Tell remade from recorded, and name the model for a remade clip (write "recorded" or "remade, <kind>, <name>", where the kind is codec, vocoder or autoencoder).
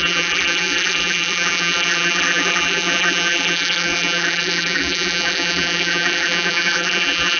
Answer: remade, vocoder, BigVGAN v2